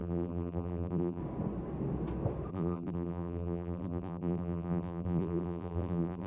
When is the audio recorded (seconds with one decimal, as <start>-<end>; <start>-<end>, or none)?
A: 1.2-2.5